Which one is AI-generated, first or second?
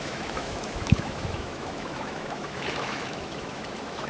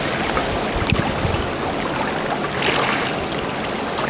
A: first